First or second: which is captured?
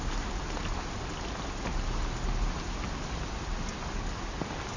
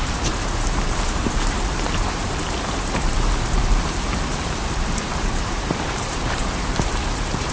first